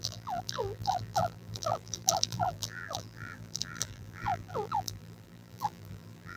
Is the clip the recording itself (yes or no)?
no